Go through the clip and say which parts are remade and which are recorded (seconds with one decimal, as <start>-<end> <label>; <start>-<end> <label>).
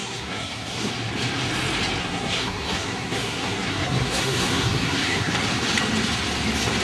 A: 0.0-0.9 remade; 0.9-2.0 recorded; 2.0-5.3 remade; 5.3-6.8 recorded